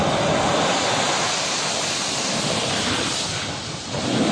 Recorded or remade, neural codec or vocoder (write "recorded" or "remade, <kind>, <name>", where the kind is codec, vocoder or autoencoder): recorded